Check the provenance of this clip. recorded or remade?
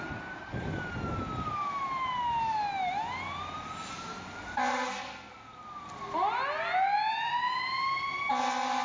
recorded